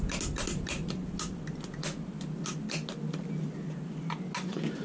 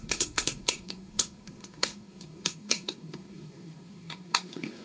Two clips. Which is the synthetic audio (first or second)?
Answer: second